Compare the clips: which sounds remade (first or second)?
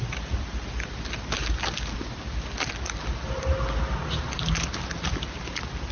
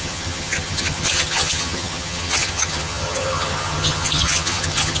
second